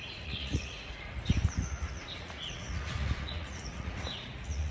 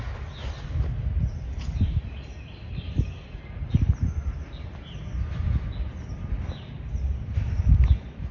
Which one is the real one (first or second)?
second